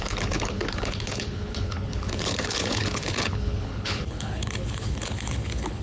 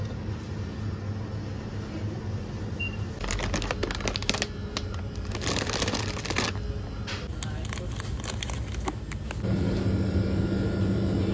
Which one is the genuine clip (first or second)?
second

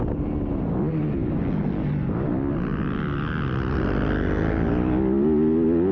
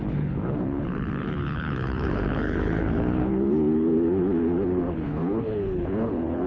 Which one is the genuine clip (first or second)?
first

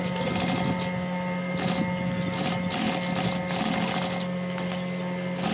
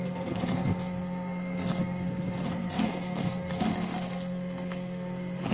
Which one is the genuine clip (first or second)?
first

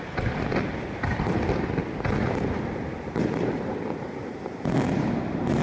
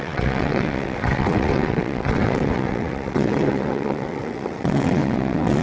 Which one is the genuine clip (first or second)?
first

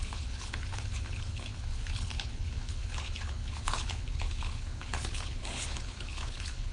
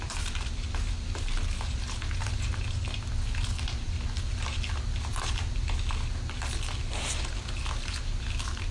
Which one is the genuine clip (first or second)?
second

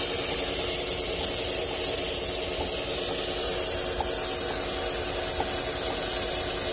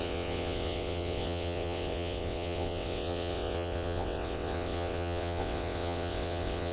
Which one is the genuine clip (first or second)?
first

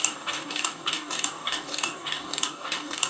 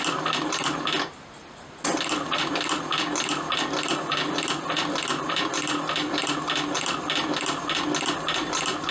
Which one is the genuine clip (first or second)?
second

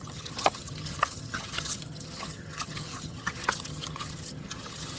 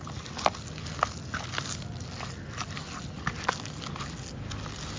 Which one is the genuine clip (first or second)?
second